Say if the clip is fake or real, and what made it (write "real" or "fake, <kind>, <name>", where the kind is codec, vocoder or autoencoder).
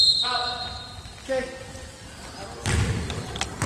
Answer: real